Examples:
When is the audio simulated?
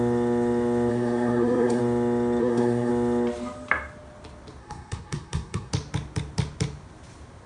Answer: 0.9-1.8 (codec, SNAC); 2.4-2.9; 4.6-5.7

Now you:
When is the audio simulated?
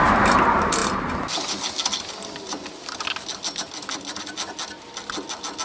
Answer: none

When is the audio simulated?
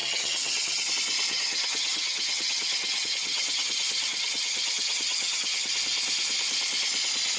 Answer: 0.0-0.9 (vocoder, HiFi-GAN); 1.3-5.7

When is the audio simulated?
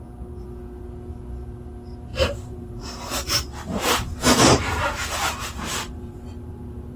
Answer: 2.1-6.3 (vocoder, BigVGAN v2)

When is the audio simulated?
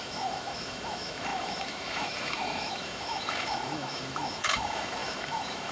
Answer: 0.0-5.7 (autoencoder, DAC-VAE)